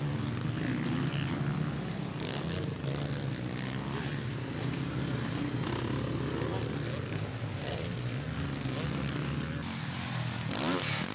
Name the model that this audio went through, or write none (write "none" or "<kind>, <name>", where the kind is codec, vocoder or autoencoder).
none